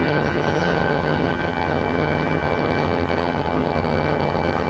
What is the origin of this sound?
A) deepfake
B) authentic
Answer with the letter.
A